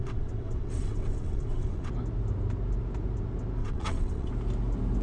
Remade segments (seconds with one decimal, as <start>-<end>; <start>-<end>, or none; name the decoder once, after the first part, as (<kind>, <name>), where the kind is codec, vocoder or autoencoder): 0.0-1.9 (vocoder, WaveNeXt); 3.6-4.3